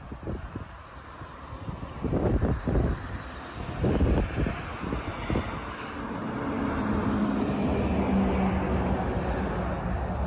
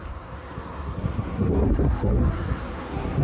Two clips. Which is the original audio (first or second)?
first